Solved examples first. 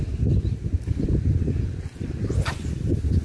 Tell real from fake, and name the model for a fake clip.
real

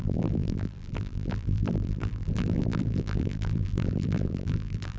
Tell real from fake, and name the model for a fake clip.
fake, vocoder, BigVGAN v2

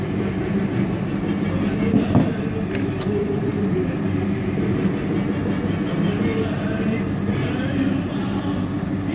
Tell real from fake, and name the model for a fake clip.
real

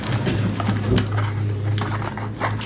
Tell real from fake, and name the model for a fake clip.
real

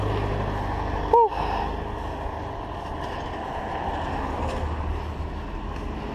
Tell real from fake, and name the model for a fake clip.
real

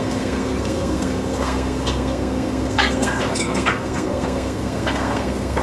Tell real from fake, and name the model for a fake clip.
fake, codec, SNAC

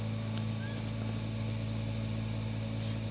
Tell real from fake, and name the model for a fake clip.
real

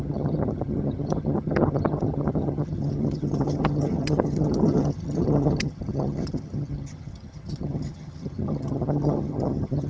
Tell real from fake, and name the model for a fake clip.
fake, vocoder, HiFi-GAN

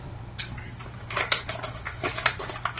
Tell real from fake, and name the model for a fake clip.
fake, vocoder, BigVGAN v2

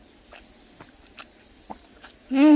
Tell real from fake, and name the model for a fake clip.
real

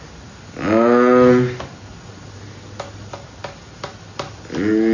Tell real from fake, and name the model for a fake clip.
real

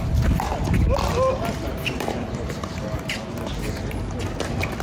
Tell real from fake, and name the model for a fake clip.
real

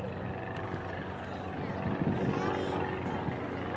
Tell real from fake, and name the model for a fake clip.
real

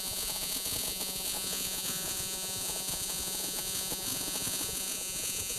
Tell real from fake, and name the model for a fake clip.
fake, vocoder, Vocos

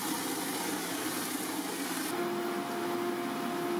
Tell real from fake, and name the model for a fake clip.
real